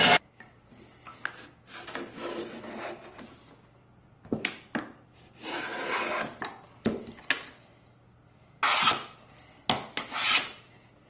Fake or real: real